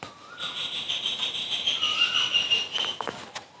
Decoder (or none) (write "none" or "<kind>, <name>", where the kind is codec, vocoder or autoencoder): none